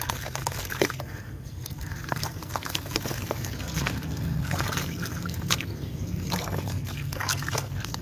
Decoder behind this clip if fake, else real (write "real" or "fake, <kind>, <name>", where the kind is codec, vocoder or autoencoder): fake, codec, SNAC